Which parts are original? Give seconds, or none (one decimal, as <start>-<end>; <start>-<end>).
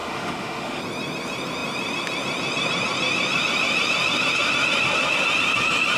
0.8-6.0